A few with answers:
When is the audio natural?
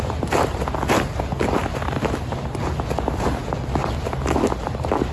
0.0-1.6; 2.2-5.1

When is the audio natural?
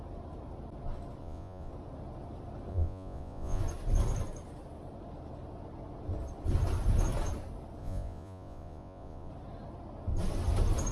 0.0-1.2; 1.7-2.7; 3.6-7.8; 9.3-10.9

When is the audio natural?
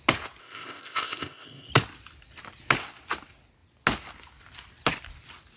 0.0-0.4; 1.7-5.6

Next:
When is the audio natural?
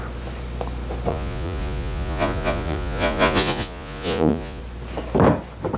0.0-1.1; 4.6-5.8